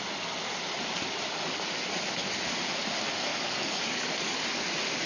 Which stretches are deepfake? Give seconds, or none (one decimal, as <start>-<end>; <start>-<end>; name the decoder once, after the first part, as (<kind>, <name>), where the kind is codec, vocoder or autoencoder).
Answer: 3.3-4.6 (codec, DAC)